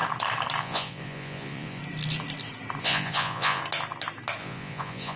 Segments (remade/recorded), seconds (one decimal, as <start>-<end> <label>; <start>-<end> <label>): 0.0-0.6 recorded; 0.6-1.8 remade; 1.8-2.8 recorded; 2.8-3.6 remade; 3.6-4.4 recorded; 4.4-5.2 remade